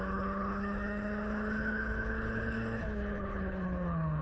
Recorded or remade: remade